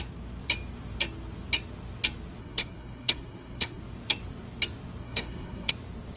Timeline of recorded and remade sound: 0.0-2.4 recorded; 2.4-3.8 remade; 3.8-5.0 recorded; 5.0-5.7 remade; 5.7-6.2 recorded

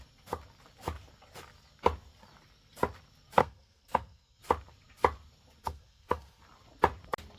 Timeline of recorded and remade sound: 0.0-3.4 recorded; 3.4-4.4 remade; 4.4-5.6 recorded; 5.6-6.4 remade; 6.4-7.4 recorded

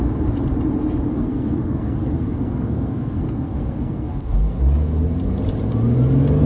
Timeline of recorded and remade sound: 0.0-1.1 recorded; 1.1-4.6 remade; 4.6-6.5 recorded

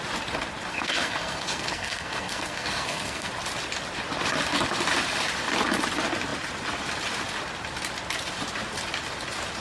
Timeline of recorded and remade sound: 0.0-0.7 recorded; 0.7-3.3 remade; 3.3-9.6 recorded

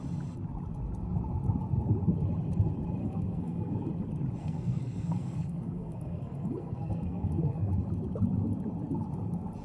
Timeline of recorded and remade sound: 0.0-3.0 recorded; 3.0-3.9 remade; 3.9-4.4 recorded; 4.4-7.7 remade; 7.7-9.6 recorded